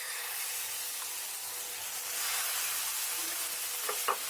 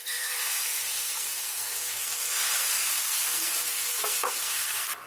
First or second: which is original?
first